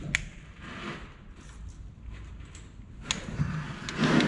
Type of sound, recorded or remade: recorded